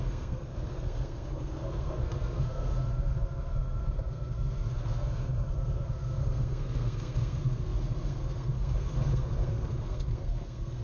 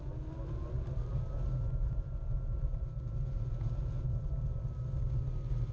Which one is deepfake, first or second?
first